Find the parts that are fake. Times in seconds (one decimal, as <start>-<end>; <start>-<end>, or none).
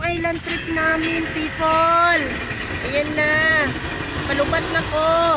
none